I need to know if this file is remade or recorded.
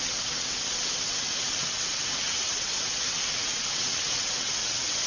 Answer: remade